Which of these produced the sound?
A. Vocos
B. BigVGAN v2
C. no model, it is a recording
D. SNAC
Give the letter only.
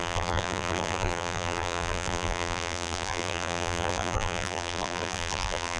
B